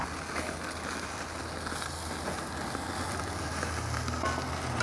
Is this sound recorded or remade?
recorded